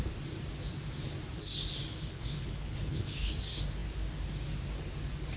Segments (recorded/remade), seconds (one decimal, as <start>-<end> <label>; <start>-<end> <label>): 0.0-1.9 recorded; 1.9-3.3 remade; 3.3-5.4 recorded